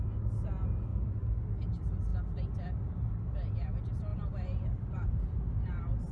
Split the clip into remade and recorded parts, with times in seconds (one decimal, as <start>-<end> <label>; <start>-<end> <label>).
0.0-0.9 recorded; 0.9-1.4 remade; 1.4-4.1 recorded; 4.1-6.1 remade